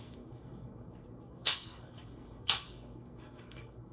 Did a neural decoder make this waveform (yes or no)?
yes